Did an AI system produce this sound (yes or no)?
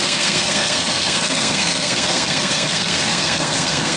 yes